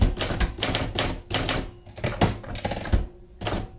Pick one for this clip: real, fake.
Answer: real